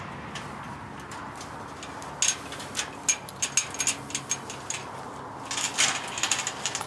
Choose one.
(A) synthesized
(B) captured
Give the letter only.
B